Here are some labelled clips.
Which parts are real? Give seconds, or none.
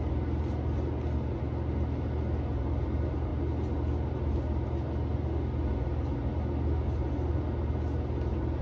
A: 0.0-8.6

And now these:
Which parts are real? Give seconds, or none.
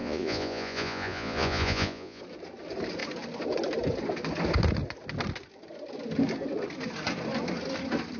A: 2.2-8.2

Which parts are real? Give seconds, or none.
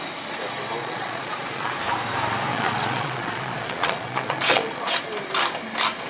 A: 0.0-0.8; 1.8-2.5; 5.1-6.1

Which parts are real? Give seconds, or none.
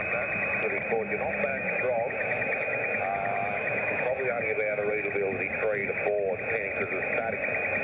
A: 0.0-1.5; 4.9-7.8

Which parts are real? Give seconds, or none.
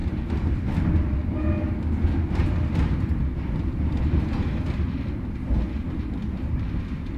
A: 0.0-6.2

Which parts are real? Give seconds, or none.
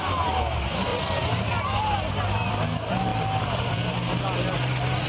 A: 0.0-0.9; 2.5-5.1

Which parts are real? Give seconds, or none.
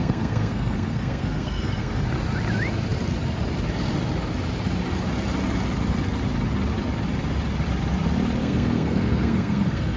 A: 2.0-8.4